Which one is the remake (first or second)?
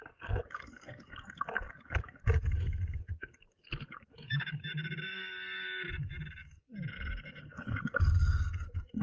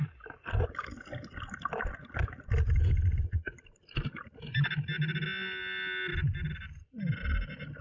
first